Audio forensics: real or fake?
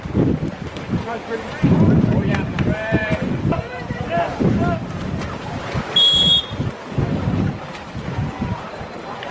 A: fake